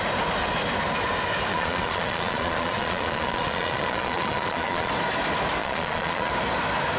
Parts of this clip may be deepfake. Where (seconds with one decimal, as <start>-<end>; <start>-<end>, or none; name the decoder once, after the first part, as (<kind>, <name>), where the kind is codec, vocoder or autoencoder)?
1.5-4.9 (vocoder, Vocos); 5.6-6.3